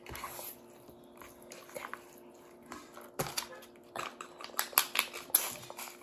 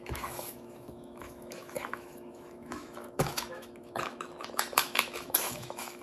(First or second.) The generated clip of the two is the second